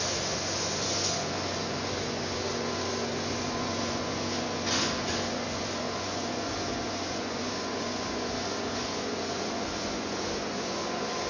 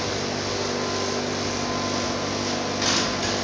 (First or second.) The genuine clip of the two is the second